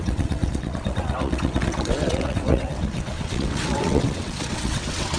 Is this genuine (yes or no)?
no